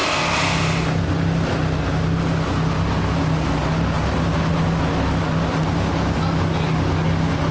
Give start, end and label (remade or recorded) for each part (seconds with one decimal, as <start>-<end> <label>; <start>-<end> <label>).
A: 0.0-7.5 recorded